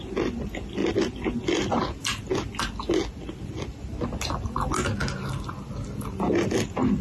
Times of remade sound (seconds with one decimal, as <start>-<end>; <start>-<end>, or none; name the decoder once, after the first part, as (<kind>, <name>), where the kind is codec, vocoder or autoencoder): 0.8-1.3 (vocoder, BigVGAN v2)